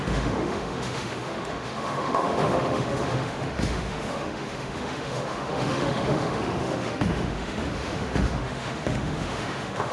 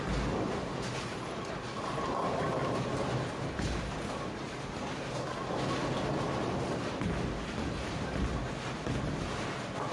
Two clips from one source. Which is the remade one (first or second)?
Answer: first